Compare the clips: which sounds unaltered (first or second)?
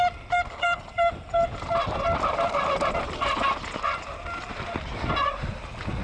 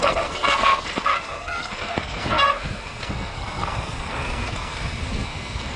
first